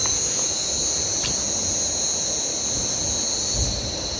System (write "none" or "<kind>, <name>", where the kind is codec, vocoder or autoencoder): none